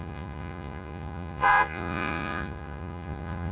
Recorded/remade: remade